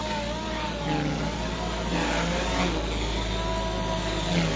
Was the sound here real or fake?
real